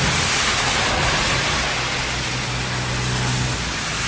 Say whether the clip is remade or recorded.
recorded